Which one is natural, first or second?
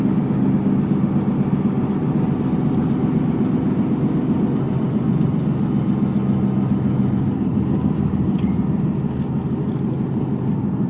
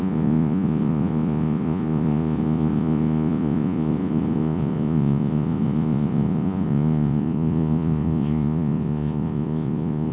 first